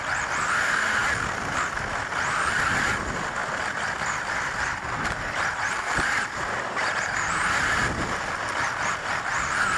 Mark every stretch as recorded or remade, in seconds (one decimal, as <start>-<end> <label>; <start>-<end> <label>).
0.0-3.4 recorded; 3.4-4.3 remade; 4.3-9.8 recorded